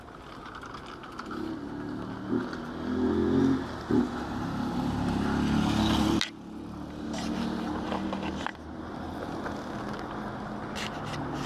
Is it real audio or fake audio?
real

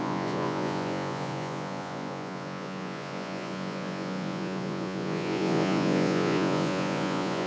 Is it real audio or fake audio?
fake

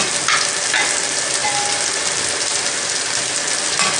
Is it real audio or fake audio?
real